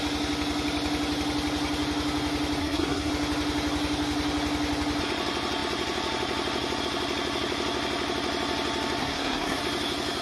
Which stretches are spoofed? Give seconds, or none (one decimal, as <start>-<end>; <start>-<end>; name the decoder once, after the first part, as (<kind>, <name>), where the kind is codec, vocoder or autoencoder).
2.6-3.1 (codec, SNAC); 9.0-9.6